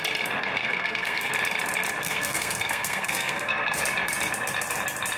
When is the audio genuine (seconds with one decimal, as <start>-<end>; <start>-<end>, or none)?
0.0-0.6; 1.3-2.0; 3.8-5.2